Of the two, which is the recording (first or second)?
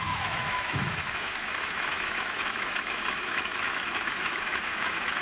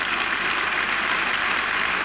second